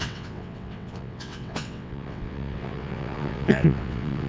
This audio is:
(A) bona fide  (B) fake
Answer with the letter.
B